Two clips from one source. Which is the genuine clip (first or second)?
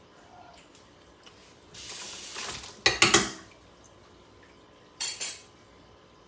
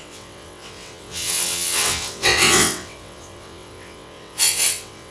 first